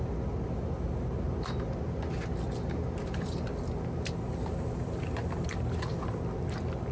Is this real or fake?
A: real